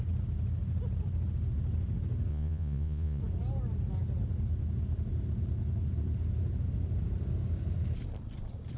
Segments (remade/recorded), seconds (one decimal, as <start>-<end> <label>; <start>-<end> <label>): 0.0-2.3 recorded; 2.3-3.2 remade; 3.2-8.8 recorded